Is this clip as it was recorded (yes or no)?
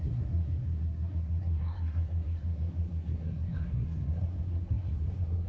no